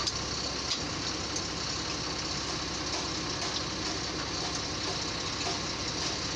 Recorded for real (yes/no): yes